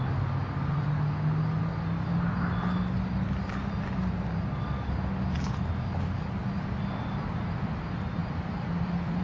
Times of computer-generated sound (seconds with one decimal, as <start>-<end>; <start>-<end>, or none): 8.2-9.2